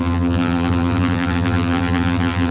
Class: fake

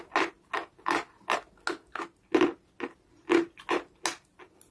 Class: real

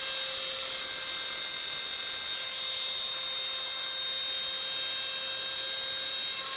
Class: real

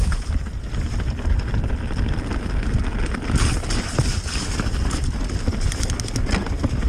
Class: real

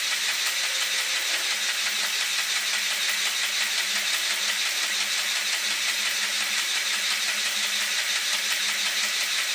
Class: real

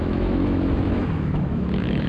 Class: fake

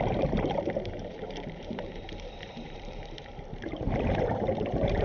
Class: fake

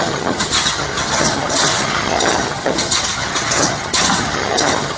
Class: fake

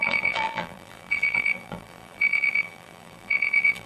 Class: fake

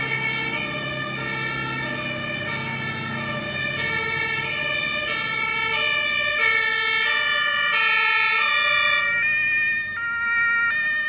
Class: real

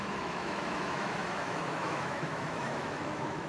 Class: fake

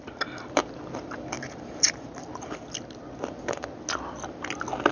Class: real